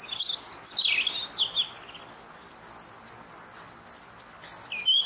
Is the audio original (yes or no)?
yes